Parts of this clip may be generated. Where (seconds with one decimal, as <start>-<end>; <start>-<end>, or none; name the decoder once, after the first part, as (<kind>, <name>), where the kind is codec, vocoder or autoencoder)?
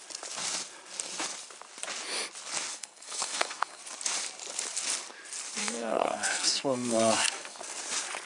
2.7-3.8 (codec, SNAC); 5.6-7.6